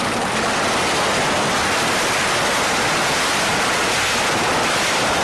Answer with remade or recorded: recorded